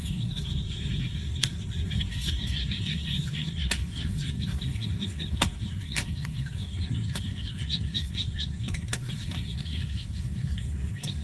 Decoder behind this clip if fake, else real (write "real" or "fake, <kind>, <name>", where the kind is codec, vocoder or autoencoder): fake, codec, SNAC